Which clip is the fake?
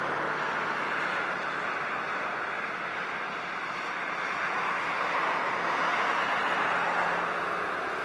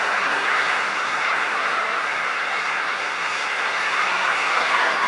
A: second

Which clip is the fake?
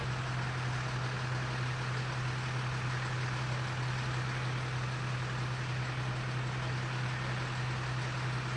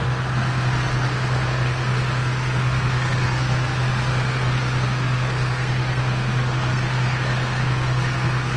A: second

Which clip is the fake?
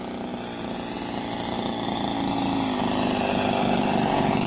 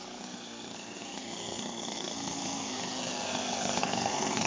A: second